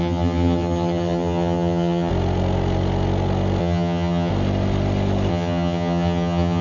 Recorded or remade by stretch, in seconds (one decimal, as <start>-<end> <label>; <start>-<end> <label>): 0.0-2.1 remade; 2.1-3.6 recorded; 3.6-4.3 remade; 4.3-5.3 recorded; 5.3-6.6 remade